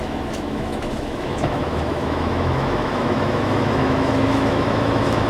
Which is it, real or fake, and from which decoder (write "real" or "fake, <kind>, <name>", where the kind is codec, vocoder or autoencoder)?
fake, autoencoder, DAC-VAE